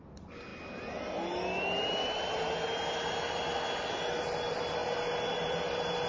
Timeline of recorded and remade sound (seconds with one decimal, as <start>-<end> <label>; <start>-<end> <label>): 0.0-6.1 recorded